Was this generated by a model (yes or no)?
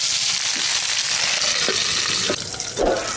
no